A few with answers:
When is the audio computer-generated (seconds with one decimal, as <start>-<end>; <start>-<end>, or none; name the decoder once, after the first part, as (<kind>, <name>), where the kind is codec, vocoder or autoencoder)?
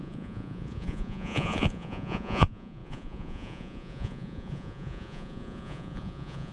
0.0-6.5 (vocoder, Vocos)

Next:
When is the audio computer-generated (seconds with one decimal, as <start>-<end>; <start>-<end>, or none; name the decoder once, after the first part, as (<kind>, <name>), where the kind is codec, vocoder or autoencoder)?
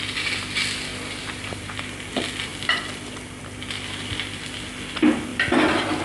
none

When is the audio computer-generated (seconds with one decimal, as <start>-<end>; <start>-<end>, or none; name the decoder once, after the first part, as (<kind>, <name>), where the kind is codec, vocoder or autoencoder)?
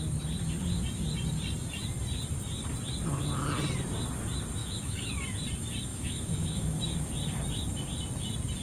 4.6-5.1 (autoencoder, DAC-VAE); 5.9-7.1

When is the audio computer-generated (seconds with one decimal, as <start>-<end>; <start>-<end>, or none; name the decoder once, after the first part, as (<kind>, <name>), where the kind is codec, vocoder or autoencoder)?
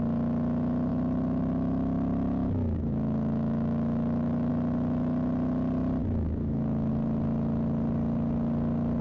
0.9-4.5 (autoencoder, DAC-VAE); 6.0-6.9